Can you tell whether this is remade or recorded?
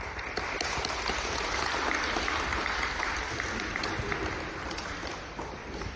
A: remade